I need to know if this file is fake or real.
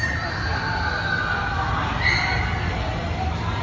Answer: real